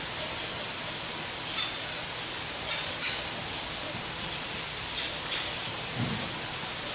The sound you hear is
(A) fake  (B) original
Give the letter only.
B